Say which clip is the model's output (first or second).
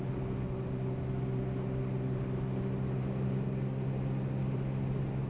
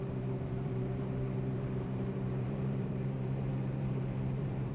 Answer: second